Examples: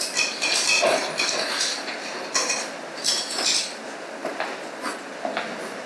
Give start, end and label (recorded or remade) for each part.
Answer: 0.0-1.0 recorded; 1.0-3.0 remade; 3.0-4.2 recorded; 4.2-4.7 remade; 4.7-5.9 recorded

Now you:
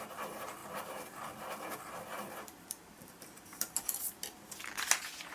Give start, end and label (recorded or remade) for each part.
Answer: 0.0-0.6 recorded; 0.6-3.7 remade; 3.7-5.3 recorded